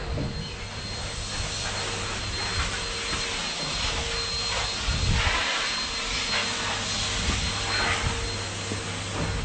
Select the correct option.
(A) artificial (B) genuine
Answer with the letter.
B